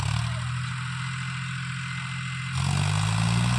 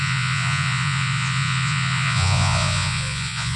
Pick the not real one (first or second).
second